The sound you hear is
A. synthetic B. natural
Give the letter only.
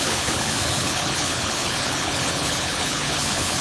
A